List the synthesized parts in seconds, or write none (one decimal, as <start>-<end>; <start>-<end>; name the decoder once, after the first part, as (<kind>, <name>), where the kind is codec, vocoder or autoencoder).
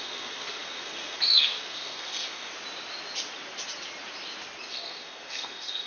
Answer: 0.0-2.5 (codec, SNAC); 4.7-5.9